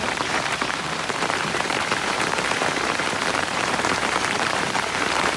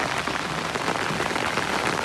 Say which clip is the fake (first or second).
first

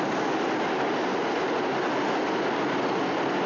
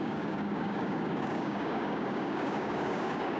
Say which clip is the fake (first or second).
second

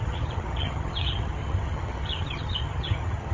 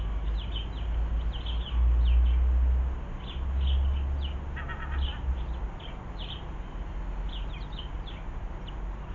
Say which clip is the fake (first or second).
first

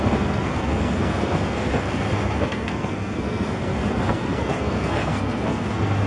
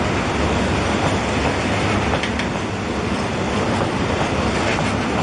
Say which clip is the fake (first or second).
first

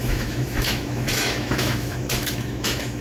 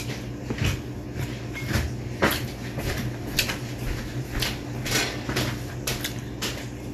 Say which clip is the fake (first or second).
first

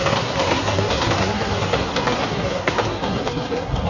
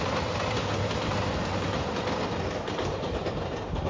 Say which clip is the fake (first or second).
first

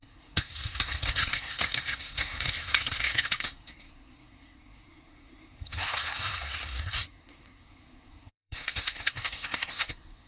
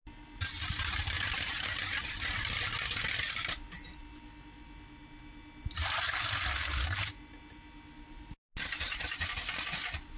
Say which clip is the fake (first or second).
first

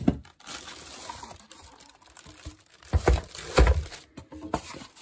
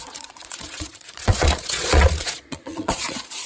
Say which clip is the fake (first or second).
second